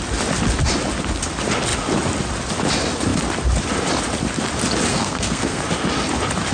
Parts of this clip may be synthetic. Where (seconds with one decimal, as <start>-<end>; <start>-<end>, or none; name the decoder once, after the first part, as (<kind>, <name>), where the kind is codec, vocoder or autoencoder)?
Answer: 4.9-5.6 (codec, SNAC)